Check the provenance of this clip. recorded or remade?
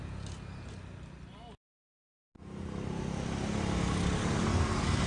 recorded